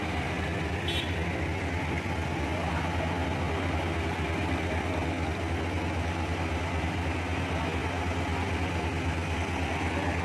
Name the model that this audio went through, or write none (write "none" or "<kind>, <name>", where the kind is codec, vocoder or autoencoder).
none